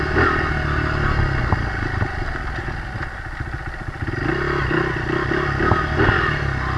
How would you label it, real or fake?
real